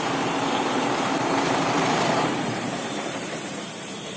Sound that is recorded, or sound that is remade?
remade